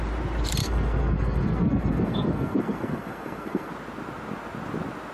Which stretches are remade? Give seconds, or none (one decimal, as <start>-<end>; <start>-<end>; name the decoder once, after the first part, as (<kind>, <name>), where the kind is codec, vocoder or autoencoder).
0.6-3.7 (codec, SNAC)